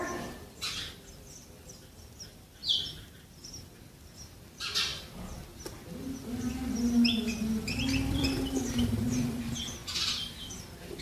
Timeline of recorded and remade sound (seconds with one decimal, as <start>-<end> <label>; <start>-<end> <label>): 0.0-2.6 remade; 2.6-3.2 recorded; 3.2-11.0 remade